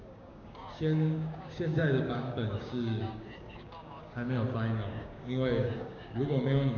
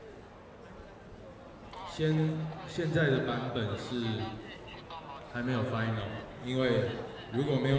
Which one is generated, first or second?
first